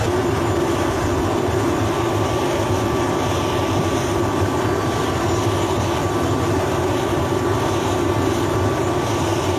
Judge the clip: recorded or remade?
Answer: recorded